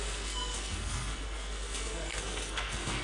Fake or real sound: fake